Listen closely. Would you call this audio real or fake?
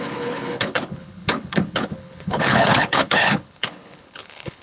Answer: fake